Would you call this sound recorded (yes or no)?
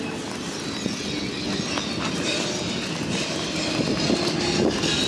yes